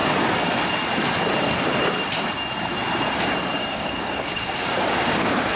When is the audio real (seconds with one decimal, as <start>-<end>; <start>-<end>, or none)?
0.0-3.6